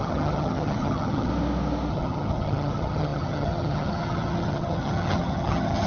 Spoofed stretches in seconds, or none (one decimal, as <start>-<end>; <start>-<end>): 0.0-1.3; 1.9-5.9